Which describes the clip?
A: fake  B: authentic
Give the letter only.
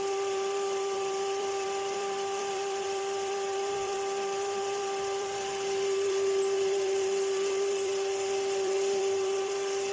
A